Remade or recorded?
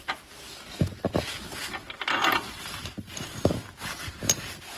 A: recorded